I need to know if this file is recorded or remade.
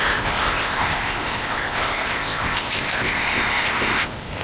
remade